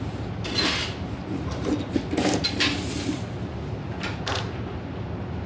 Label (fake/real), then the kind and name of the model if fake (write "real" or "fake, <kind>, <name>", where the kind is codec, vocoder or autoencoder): real